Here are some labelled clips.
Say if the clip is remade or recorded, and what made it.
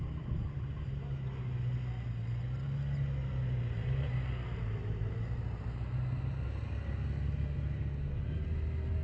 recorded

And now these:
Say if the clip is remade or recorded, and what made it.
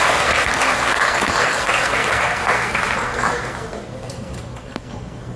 remade, codec, SNAC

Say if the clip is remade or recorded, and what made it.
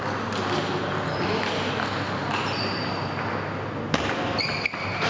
recorded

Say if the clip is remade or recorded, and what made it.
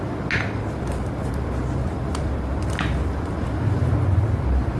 recorded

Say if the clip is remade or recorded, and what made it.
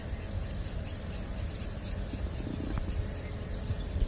recorded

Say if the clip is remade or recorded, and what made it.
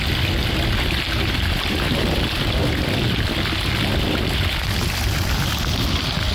recorded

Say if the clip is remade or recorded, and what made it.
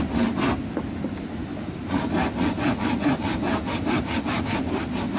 recorded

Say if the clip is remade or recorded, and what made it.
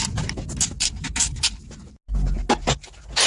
recorded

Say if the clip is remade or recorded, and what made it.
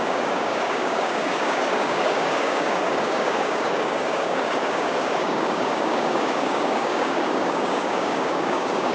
remade, codec, DAC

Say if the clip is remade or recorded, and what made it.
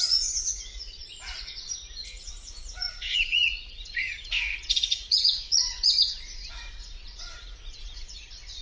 remade, vocoder, Vocos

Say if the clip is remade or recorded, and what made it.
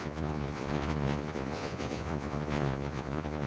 remade, vocoder, Vocos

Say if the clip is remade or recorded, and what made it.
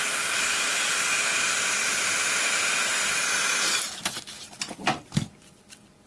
recorded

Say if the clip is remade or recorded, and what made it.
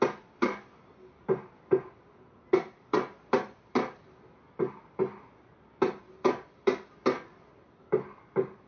recorded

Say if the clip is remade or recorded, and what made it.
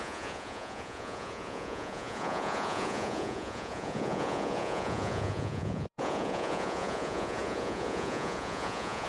remade, vocoder, Vocos